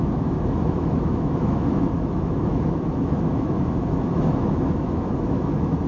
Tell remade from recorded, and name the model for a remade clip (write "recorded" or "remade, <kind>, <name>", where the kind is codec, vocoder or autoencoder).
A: remade, autoencoder, DAC-VAE